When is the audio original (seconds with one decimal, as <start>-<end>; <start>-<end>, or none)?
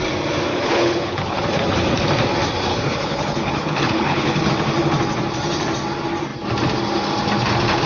0.0-0.5; 1.4-2.7; 4.5-7.9